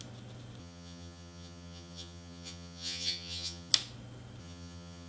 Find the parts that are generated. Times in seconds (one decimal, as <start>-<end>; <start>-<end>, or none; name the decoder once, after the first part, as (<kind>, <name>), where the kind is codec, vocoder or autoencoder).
0.6-3.7 (vocoder, HiFi-GAN); 4.4-5.1